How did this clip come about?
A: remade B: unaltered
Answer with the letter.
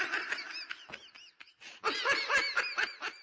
B